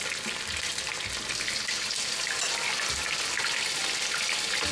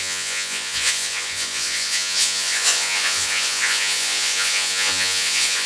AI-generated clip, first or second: second